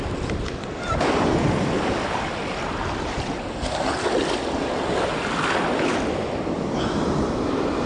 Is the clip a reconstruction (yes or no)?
no